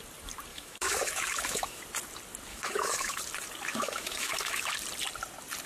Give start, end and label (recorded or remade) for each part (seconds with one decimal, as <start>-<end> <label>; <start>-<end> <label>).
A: 0.0-0.5 recorded; 0.5-1.8 remade; 1.8-2.5 recorded; 2.5-3.2 remade; 3.2-3.7 recorded; 3.7-4.7 remade; 4.7-5.7 recorded